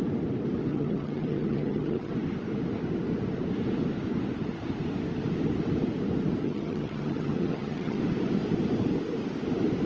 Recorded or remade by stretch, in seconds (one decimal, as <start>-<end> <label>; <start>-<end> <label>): 0.0-0.7 recorded; 0.7-2.1 remade; 2.1-6.4 recorded; 6.4-8.0 remade; 8.0-9.9 recorded